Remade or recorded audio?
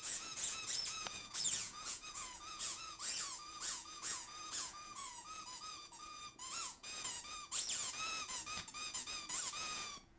remade